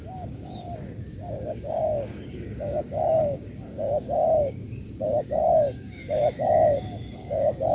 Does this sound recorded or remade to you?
remade